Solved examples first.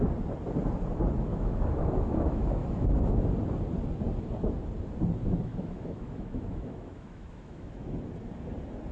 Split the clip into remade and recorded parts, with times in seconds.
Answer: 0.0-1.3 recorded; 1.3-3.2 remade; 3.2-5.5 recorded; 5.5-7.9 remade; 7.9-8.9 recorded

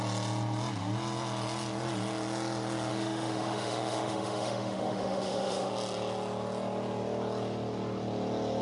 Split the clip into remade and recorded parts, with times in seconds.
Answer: 0.0-2.9 recorded; 2.9-5.7 remade; 5.7-8.6 recorded

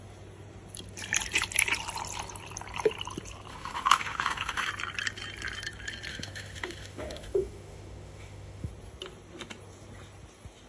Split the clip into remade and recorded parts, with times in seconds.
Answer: 0.0-3.5 recorded; 3.5-4.7 remade; 4.7-6.1 recorded; 6.1-8.7 remade; 8.7-10.7 recorded

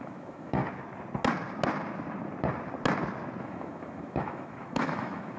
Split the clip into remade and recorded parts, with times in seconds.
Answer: 0.0-0.6 remade; 0.6-3.4 recorded; 3.4-5.4 remade

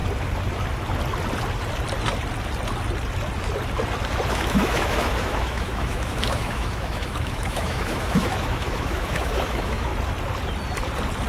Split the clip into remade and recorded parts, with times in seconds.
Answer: 0.0-4.3 recorded; 4.3-9.9 remade; 9.9-11.3 recorded

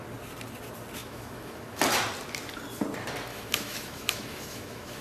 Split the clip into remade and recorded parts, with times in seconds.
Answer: 0.0-1.0 recorded; 1.0-1.8 remade; 1.8-3.3 recorded; 3.3-5.0 remade

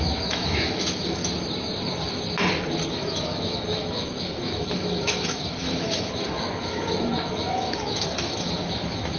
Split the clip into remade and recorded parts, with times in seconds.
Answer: 0.0-1.2 remade; 1.2-2.9 recorded; 2.9-9.2 remade

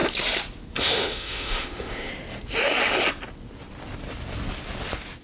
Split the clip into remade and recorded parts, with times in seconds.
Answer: 0.0-0.8 recorded; 0.8-2.1 remade; 2.1-5.2 recorded